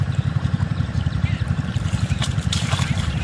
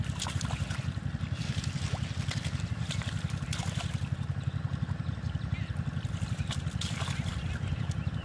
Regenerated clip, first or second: first